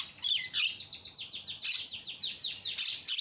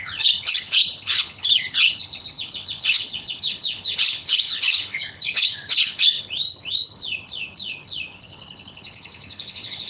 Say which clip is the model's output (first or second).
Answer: second